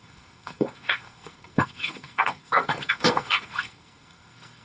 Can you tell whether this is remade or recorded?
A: remade